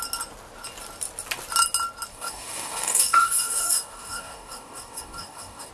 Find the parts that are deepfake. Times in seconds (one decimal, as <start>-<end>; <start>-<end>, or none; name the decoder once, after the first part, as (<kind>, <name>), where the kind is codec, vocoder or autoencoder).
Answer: 2.1-5.7 (codec, DAC)